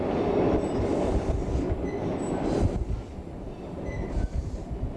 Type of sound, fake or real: real